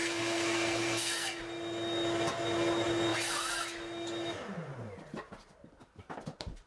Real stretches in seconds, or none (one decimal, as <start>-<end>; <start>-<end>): 1.4-6.7